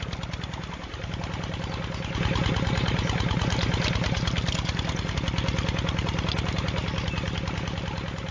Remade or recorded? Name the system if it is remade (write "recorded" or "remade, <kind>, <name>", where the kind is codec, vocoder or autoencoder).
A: recorded